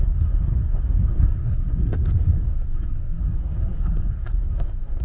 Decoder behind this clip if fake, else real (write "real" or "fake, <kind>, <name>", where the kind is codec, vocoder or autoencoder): fake, codec, SNAC